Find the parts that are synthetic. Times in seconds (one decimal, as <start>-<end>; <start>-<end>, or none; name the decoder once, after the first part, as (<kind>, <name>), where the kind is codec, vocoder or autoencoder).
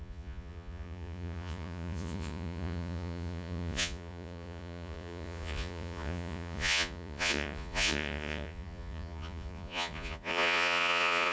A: 0.0-11.3 (vocoder, Vocos)